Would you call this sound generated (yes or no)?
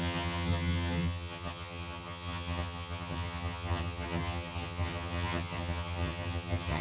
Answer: yes